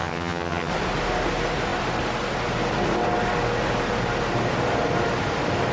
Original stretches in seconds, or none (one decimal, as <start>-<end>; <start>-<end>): 0.7-5.7